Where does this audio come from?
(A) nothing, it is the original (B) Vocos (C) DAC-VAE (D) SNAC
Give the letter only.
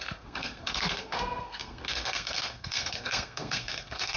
D